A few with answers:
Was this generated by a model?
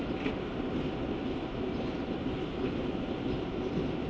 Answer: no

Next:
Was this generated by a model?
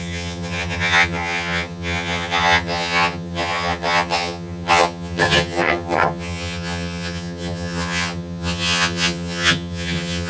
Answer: yes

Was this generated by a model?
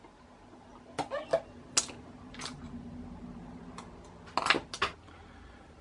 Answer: no